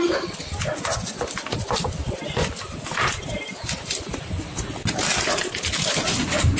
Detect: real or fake real